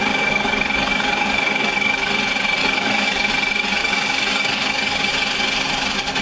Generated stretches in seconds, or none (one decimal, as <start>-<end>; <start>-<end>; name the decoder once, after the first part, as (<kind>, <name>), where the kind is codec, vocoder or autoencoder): 0.0-2.1 (codec, DAC); 2.6-3.3; 3.8-5.1